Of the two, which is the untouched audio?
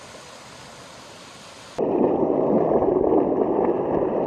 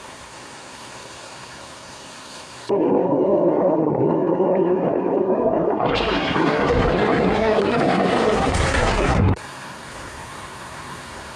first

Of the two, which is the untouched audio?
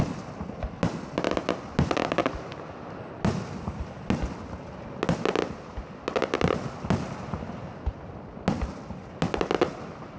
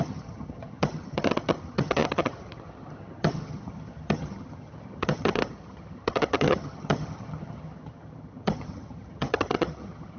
first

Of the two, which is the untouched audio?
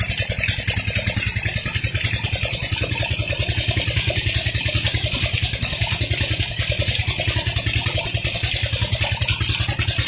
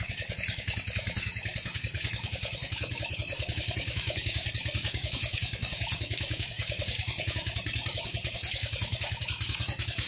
first